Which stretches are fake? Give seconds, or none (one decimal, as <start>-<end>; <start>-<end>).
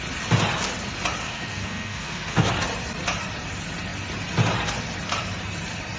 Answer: 1.2-2.5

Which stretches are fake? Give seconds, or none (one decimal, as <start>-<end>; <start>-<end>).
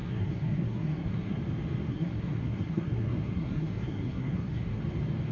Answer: 0.0-1.4; 1.9-4.8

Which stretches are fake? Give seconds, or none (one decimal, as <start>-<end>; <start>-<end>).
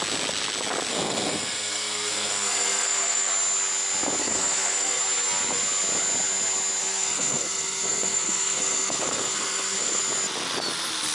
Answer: 0.9-3.3; 4.2-5.0; 6.8-10.0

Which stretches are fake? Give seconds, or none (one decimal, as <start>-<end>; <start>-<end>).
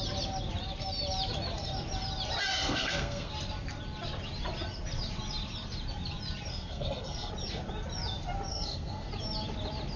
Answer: 2.5-3.3; 6.5-7.3; 8.5-9.1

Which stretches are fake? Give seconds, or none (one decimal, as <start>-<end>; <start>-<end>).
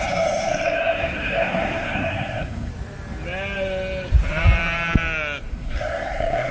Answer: 0.0-2.7; 5.5-6.5